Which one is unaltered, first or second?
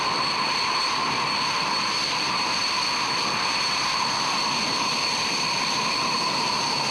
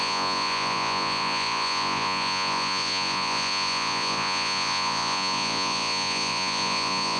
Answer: first